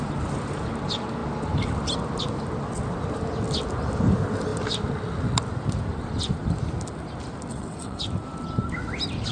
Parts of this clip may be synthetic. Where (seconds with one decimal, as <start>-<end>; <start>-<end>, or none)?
7.5-8.0